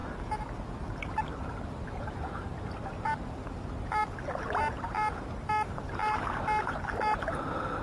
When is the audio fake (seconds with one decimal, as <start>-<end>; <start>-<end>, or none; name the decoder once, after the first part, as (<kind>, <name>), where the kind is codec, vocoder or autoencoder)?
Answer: 2.0-4.0 (vocoder, BigVGAN v2); 7.3-7.8